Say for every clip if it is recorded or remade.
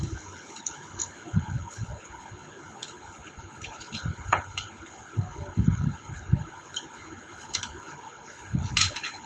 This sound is remade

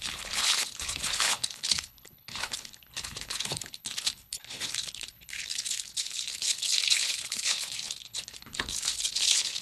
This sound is remade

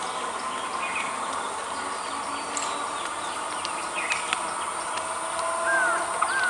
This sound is recorded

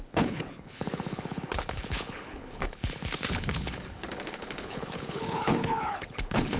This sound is remade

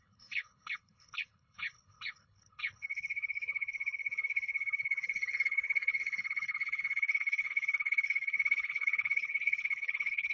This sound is remade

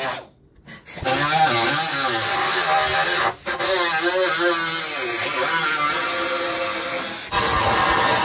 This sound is recorded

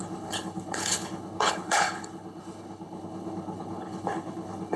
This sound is remade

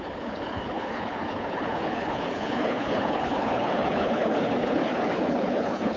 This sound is remade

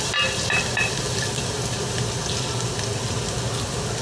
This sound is recorded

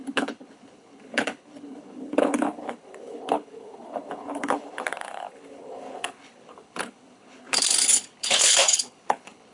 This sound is remade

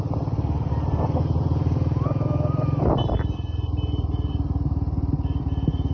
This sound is recorded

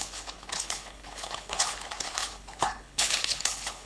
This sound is remade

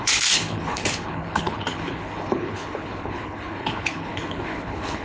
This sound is remade